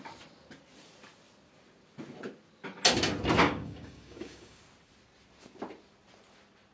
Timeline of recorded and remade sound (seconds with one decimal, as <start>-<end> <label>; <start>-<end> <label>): 0.0-3.4 recorded; 3.4-4.6 remade; 4.6-6.7 recorded